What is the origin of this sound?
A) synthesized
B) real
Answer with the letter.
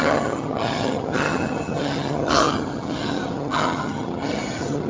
A